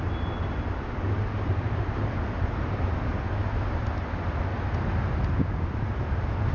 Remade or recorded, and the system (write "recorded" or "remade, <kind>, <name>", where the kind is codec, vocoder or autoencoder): recorded